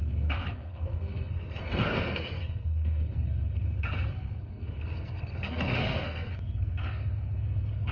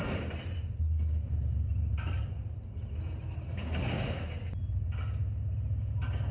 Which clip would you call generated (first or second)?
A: first